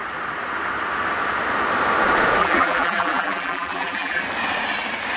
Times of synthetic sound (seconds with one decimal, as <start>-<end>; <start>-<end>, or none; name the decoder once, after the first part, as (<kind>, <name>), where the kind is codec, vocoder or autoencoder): 2.4-4.2 (vocoder, BigVGAN v2)